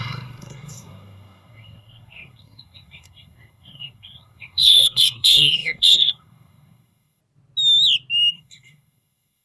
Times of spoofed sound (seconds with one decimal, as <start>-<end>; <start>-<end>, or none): 0.0-7.2; 8.3-9.4